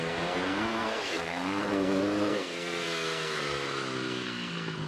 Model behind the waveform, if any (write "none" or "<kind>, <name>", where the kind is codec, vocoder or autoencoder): codec, SNAC